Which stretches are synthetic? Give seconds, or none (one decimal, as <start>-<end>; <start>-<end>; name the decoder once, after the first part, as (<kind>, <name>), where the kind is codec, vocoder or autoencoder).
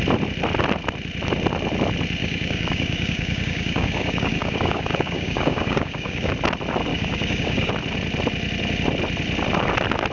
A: 2.2-6.3 (codec, DAC); 6.9-7.7